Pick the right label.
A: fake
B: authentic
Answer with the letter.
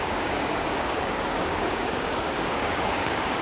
A